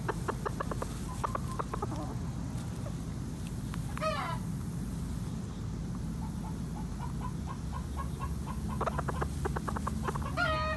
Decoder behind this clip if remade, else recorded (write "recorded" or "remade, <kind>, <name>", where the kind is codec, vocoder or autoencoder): recorded